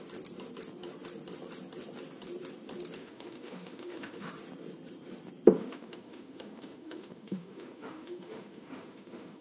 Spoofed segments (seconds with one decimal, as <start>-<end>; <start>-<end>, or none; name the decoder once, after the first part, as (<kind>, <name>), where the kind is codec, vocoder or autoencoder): 3.0-4.3 (autoencoder, DAC-VAE); 5.6-9.4